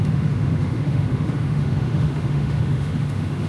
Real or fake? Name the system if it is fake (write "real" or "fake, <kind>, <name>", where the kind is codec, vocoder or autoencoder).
fake, autoencoder, DAC-VAE